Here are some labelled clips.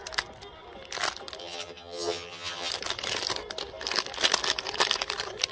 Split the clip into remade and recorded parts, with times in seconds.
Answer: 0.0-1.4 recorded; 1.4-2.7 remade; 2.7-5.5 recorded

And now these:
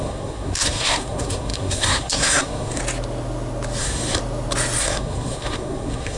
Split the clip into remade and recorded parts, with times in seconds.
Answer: 0.0-2.8 remade; 2.8-3.8 recorded; 3.8-4.2 remade; 4.2-4.8 recorded; 4.8-6.2 remade

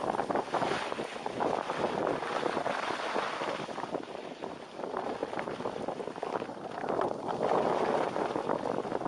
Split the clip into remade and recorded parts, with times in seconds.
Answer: 0.0-9.1 recorded

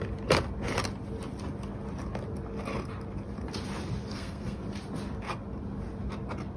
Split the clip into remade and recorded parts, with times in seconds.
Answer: 0.0-4.1 recorded; 4.1-4.6 remade; 4.6-6.6 recorded

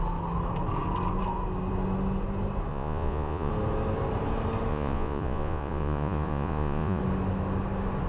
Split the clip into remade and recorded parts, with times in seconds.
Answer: 0.0-2.7 recorded; 2.7-3.5 remade; 3.5-4.7 recorded; 4.7-7.0 remade; 7.0-8.1 recorded